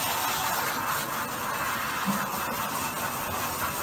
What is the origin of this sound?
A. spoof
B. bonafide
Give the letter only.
B